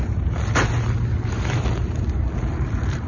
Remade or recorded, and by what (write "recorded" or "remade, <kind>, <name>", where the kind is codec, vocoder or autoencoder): remade, vocoder, BigVGAN v2